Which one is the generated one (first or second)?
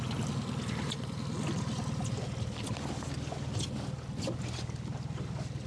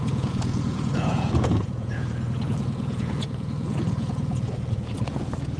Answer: second